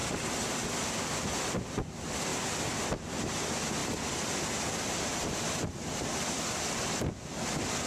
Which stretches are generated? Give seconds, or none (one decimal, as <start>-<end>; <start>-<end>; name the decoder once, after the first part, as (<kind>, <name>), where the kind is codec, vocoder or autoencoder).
0.0-0.5 (vocoder, BigVGAN v2); 3.8-6.3